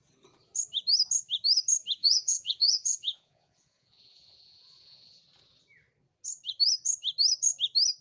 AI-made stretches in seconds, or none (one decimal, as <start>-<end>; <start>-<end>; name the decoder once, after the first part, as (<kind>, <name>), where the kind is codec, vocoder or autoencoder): 2.0-5.2 (vocoder, Vocos)